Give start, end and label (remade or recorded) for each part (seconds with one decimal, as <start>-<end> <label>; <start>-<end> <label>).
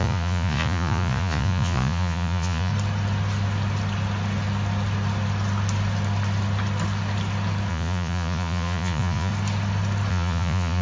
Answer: 0.0-2.7 remade; 2.7-7.7 recorded; 7.7-9.3 remade; 9.3-10.1 recorded; 10.1-10.8 remade